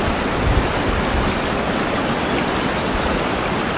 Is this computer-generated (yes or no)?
no